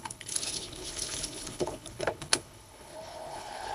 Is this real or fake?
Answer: fake